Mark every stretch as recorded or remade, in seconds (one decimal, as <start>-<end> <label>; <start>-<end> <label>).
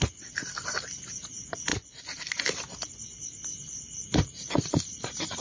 0.0-1.7 remade; 1.7-2.9 recorded; 2.9-5.4 remade